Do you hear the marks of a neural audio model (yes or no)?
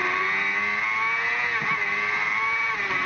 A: no